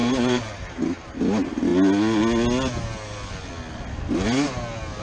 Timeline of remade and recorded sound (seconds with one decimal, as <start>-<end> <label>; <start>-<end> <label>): 0.0-1.2 remade; 1.2-5.0 recorded